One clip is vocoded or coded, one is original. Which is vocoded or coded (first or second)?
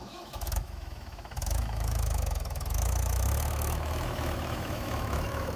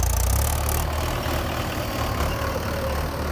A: first